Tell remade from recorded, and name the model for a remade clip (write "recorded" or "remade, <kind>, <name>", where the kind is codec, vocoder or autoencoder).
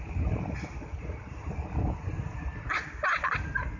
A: recorded